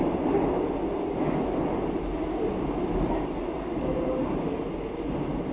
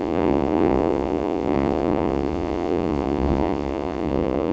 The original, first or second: first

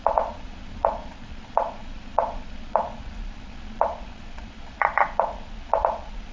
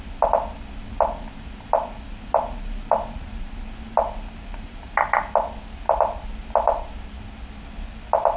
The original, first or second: second